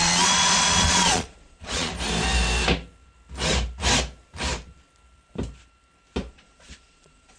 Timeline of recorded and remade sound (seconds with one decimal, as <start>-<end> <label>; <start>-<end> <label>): 0.0-1.9 remade; 1.9-6.3 recorded; 6.3-7.4 remade